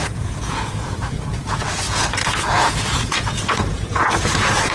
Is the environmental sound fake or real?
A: fake